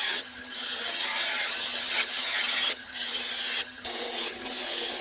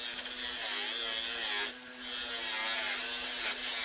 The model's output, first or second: first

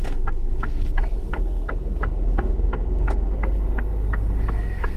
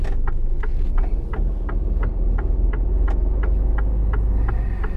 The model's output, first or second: first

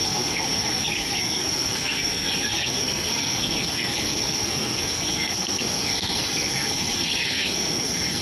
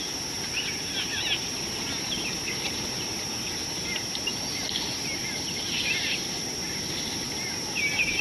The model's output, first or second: first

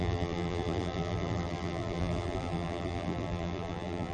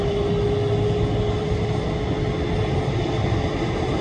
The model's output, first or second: first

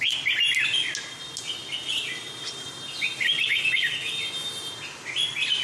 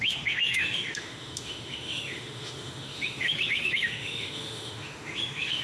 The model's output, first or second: second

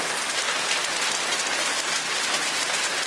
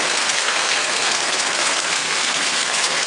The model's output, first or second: second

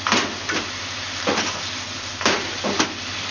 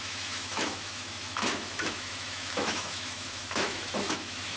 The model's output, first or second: second